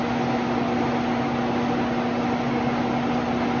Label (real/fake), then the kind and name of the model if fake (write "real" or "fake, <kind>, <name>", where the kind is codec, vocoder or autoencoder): real